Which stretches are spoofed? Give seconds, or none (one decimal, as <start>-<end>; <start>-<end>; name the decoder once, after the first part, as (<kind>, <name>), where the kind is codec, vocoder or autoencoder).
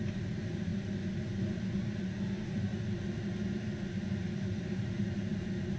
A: 0.0-0.7 (vocoder, BigVGAN v2); 2.3-2.7; 4.6-5.3